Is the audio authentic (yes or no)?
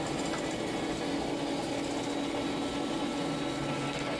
yes